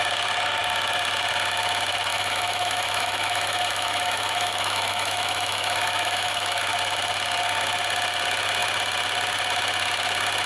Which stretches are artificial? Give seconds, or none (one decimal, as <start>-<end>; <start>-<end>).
2.1-6.6